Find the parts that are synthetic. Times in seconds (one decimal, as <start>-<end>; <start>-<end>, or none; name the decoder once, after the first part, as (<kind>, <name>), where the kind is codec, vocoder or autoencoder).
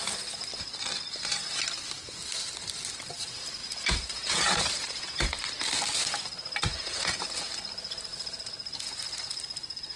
3.6-5.2 (vocoder, Vocos); 6.7-7.2